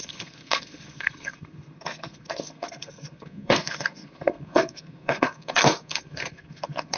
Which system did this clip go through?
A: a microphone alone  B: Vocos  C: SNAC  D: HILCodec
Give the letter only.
C